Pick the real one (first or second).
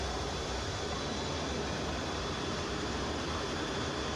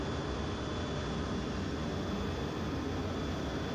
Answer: second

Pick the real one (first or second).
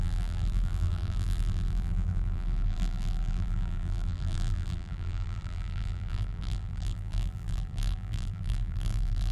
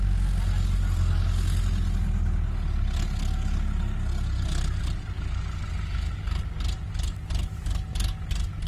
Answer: second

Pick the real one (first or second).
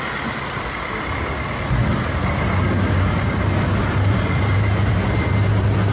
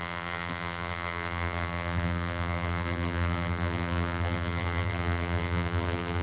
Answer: first